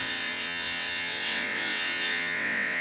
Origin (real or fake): fake